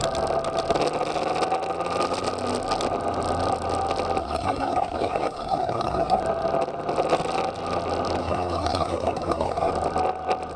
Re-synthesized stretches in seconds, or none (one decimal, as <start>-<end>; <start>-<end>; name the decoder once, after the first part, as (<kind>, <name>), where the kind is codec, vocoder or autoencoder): 4.2-6.2 (codec, SNAC); 8.2-9.7